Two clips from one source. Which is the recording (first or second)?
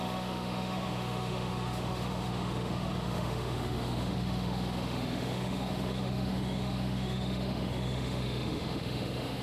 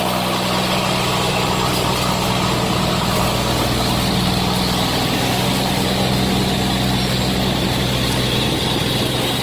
second